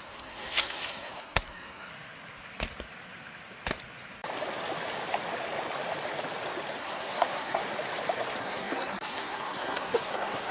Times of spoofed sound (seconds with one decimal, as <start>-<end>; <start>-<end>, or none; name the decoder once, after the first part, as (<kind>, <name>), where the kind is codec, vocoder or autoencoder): 0.0-1.9 (codec, SNAC); 6.8-7.6; 8.4-10.5